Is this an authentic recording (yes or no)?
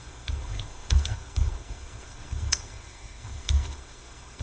no